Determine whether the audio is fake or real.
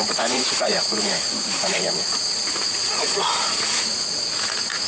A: fake